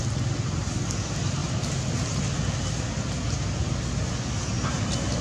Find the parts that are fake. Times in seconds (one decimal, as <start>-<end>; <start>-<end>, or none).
none